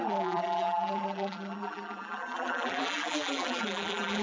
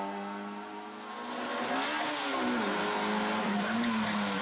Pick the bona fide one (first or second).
second